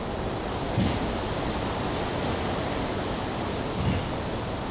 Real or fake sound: real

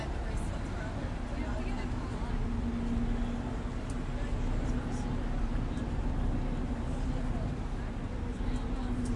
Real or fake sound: real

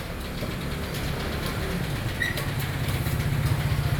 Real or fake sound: real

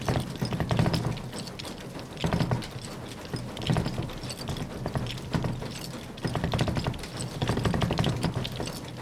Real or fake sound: real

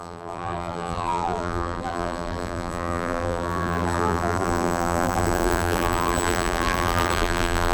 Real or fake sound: fake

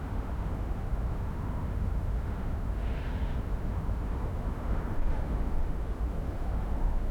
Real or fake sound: fake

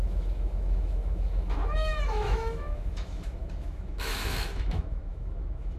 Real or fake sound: fake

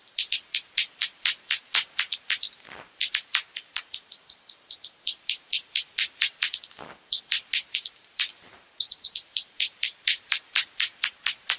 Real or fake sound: fake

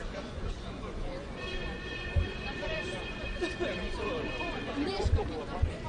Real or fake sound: fake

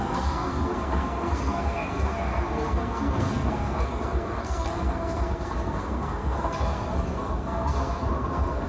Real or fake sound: fake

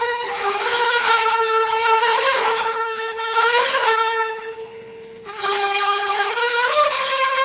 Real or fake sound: fake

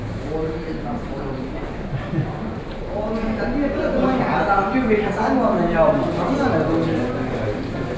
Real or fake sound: real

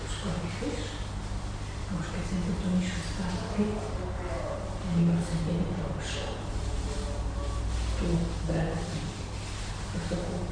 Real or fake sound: real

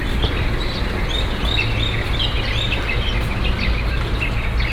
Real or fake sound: real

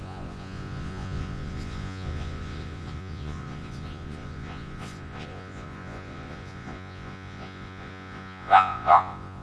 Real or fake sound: fake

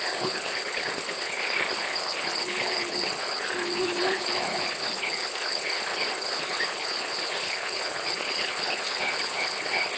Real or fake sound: fake